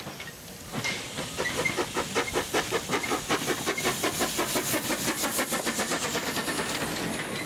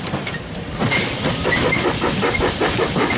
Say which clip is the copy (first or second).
second